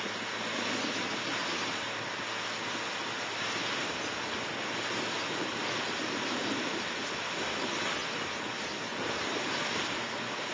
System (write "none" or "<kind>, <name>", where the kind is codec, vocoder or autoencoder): none